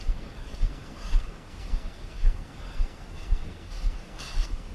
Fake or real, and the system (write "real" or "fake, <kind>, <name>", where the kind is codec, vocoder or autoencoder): fake, codec, SNAC